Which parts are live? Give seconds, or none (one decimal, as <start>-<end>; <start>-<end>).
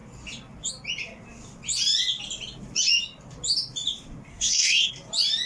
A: 0.0-4.3; 4.9-5.5